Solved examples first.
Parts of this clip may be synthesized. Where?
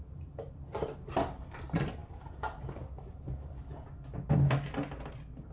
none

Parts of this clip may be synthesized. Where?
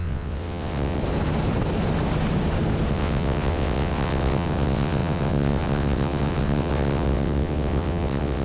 0.0-1.0 (vocoder, WaveNeXt); 2.9-8.4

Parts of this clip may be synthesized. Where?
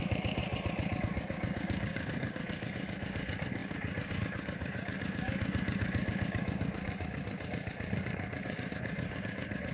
0.0-0.4 (codec, DAC); 1.0-9.7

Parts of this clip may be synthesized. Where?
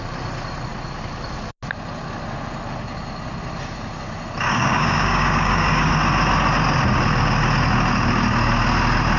4.5-5.9 (codec, DAC)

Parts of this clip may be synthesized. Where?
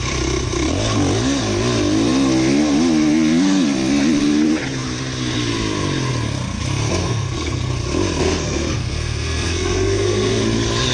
7.0-7.7 (codec, SNAC); 8.2-10.4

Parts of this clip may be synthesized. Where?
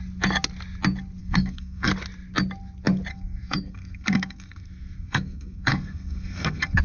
1.2-1.9 (codec, SNAC); 3.1-6.8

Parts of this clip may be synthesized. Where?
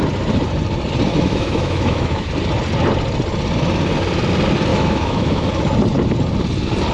1.1-2.3 (autoencoder, DAC-VAE); 4.7-5.5